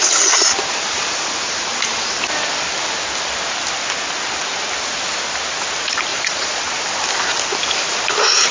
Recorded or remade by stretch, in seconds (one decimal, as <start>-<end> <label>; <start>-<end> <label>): 0.0-6.1 recorded; 6.1-6.7 remade; 6.7-8.5 recorded